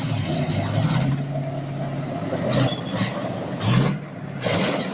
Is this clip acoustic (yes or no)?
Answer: yes